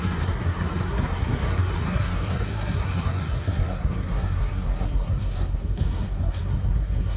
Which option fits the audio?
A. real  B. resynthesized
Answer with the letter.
B